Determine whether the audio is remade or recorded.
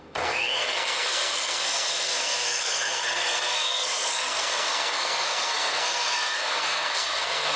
remade